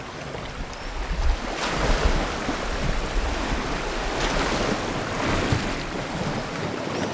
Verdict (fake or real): real